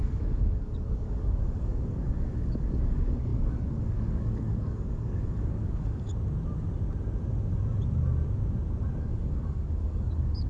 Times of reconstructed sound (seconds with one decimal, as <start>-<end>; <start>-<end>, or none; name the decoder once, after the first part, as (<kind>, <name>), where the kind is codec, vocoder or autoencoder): 0.0-6.1 (codec, DAC); 9.0-10.5